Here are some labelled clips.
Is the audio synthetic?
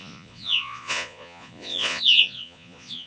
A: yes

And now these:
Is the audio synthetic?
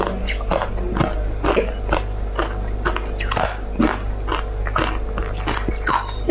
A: no